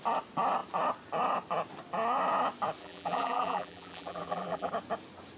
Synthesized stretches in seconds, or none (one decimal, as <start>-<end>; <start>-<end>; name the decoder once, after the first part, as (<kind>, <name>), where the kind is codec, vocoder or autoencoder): 2.8-4.7 (vocoder, BigVGAN v2)